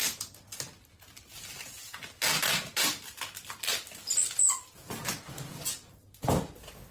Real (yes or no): yes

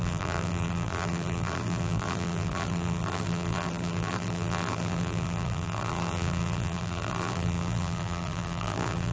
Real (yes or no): no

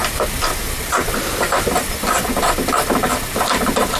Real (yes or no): yes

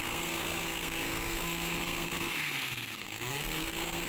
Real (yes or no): no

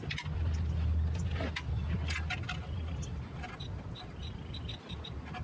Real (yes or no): yes